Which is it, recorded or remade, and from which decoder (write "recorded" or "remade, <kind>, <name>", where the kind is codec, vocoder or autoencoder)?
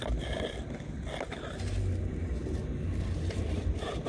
recorded